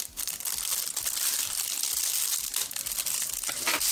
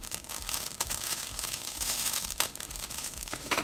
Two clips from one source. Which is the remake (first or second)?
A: second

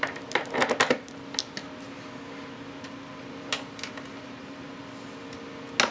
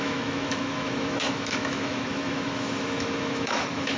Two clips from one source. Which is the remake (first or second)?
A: second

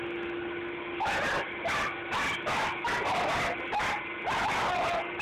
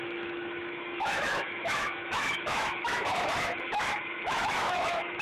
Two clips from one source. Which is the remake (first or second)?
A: second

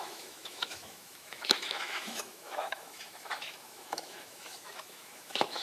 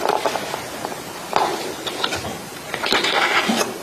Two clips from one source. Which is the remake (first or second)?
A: first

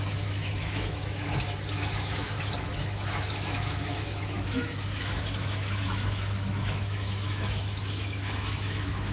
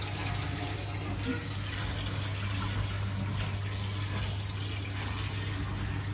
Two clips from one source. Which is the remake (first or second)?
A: first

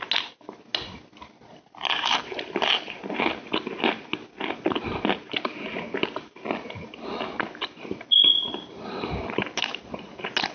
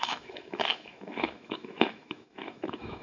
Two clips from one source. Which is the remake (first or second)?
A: second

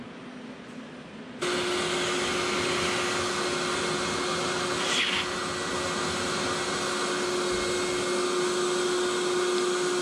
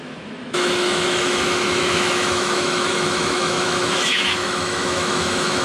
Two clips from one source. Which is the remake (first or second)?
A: second